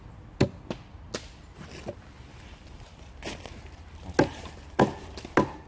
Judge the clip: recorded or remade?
recorded